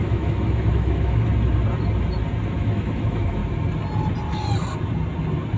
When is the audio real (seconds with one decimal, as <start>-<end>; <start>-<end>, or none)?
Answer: 1.3-2.5; 3.4-5.6